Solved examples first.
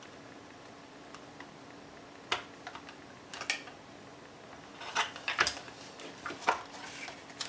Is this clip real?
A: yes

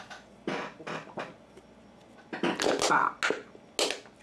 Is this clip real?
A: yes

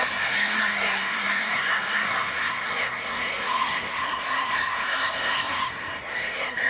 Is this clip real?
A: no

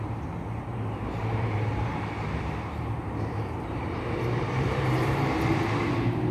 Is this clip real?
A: no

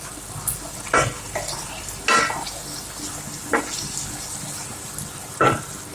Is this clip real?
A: yes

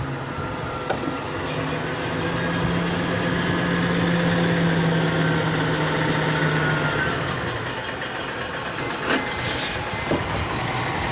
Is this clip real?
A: yes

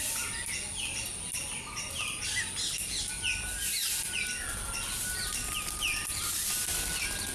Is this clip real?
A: yes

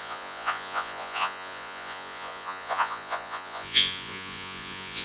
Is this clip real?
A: no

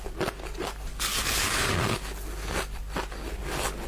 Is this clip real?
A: yes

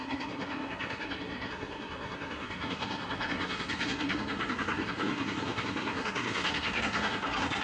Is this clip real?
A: no